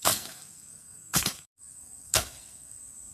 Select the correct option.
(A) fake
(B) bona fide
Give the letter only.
A